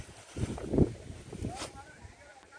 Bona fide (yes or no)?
yes